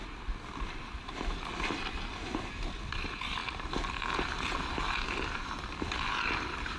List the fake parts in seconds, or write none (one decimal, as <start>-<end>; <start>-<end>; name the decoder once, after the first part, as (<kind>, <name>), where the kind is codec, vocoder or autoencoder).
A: none